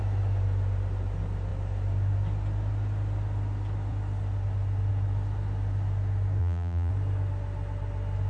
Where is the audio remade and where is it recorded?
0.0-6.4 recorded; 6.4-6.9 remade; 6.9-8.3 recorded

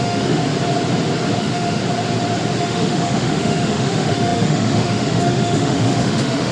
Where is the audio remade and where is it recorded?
0.0-0.4 remade; 0.4-1.4 recorded; 1.4-1.8 remade; 1.8-2.6 recorded; 2.6-6.5 remade